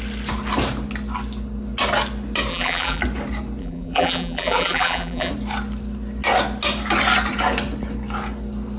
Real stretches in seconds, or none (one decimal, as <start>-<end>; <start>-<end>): 0.0-2.5; 3.0-3.6; 5.3-8.8